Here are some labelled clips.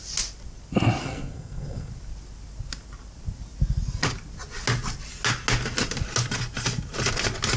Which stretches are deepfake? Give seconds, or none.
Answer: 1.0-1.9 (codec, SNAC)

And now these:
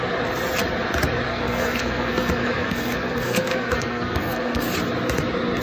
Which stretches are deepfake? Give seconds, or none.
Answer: 1.3-4.7 (codec, SNAC)

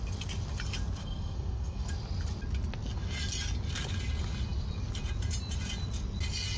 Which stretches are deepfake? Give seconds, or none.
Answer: 1.0-1.9 (codec, SNAC)

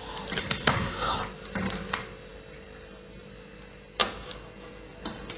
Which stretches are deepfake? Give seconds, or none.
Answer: 0.4-1.2 (codec, SNAC)